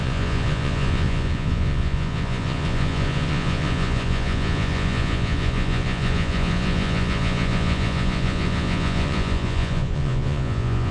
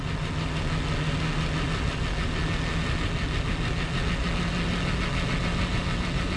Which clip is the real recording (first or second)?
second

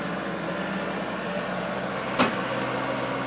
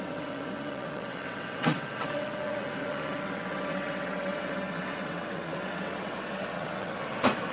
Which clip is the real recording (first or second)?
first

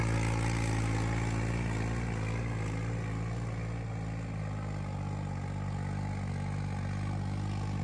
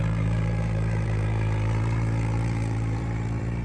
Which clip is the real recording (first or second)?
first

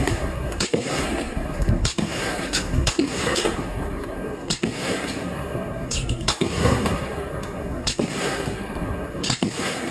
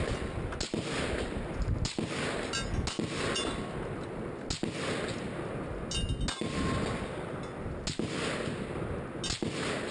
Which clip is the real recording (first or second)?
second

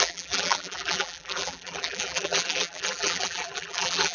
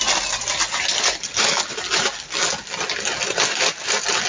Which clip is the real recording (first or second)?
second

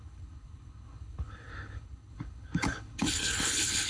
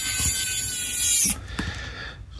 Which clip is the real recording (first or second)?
second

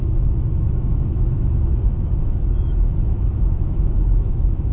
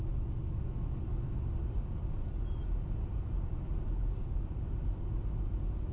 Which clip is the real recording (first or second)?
second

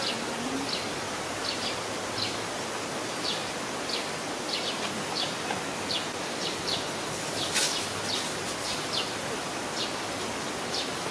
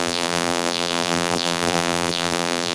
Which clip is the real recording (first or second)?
first